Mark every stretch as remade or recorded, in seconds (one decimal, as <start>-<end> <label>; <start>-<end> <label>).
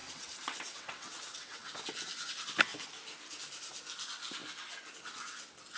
0.0-1.7 remade; 1.7-5.8 recorded